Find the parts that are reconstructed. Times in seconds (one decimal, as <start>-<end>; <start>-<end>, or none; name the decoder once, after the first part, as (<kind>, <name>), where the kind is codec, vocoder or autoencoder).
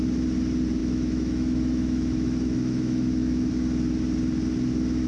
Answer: 0.8-3.5 (autoencoder, DAC-VAE)